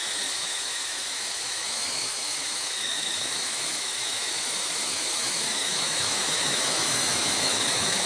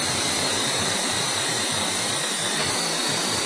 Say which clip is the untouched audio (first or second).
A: second